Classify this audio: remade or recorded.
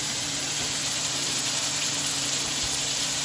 remade